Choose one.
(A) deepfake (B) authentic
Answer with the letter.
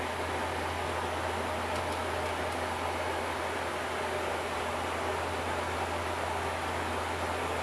B